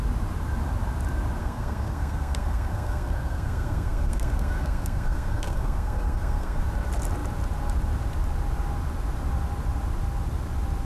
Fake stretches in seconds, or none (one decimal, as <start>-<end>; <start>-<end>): 1.4-6.6

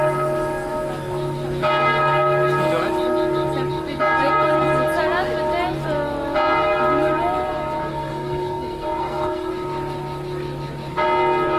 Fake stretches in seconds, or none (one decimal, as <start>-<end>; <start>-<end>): 7.9-9.5

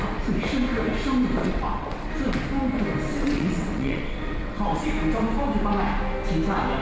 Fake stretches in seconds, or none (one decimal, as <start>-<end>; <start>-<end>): 1.4-2.1; 3.1-4.9

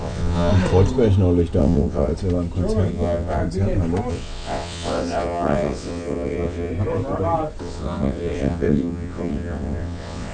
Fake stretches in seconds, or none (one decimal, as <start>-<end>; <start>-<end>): 0.0-0.5; 1.6-2.1; 2.9-3.4; 4.1-6.7; 7.6-10.3